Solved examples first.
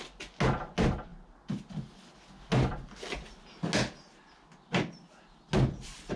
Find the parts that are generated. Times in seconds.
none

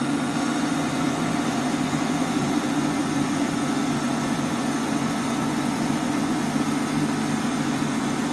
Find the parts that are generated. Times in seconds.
0.0-6.4 (vocoder, Vocos); 7.4-8.3

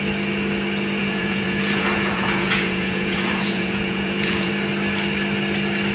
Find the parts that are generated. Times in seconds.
1.0-4.5 (vocoder, Vocos)

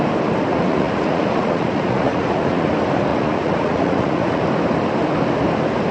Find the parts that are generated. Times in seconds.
0.5-2.7 (vocoder, Vocos); 3.1-4.4

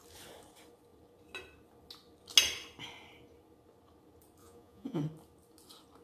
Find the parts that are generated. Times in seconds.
4.4-5.0 (vocoder, Vocos)